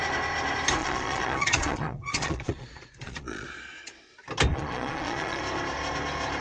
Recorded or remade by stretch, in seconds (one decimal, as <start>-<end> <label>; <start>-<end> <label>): 0.0-0.8 recorded; 0.8-4.0 remade; 4.0-4.5 recorded; 4.5-5.4 remade; 5.4-6.4 recorded